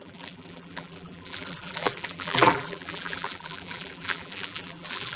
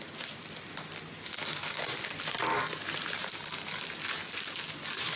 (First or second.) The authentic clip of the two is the second